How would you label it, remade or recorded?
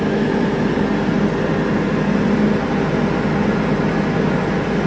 recorded